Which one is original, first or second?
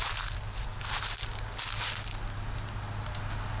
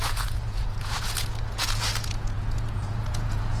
first